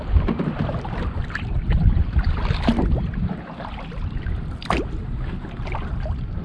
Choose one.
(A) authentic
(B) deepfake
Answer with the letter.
A